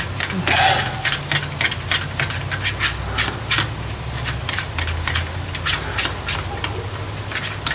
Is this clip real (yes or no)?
yes